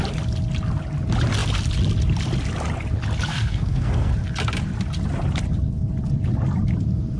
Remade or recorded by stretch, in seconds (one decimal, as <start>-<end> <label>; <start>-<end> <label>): 0.0-3.3 recorded; 3.3-4.1 remade; 4.1-7.2 recorded